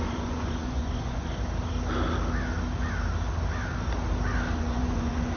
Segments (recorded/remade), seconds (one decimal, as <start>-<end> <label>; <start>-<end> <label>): 0.0-1.3 remade; 1.3-4.5 recorded; 4.5-5.4 remade